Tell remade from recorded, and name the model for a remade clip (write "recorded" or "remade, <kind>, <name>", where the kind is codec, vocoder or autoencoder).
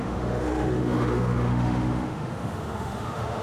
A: remade, autoencoder, DAC-VAE